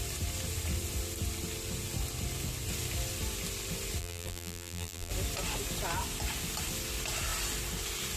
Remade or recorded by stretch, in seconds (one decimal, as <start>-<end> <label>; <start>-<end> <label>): 0.0-4.0 recorded; 4.0-5.1 remade; 5.1-8.2 recorded